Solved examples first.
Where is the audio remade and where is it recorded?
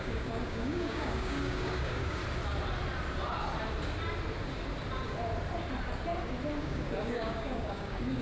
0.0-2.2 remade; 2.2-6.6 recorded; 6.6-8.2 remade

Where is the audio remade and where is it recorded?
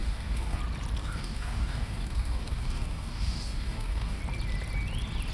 0.0-0.6 remade; 0.6-1.0 recorded; 1.0-4.2 remade; 4.2-5.3 recorded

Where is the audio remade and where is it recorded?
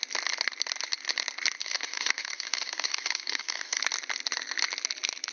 0.0-1.6 recorded; 1.6-3.8 remade; 3.8-5.3 recorded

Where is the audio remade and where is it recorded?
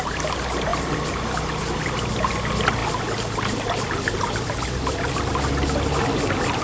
0.0-6.6 recorded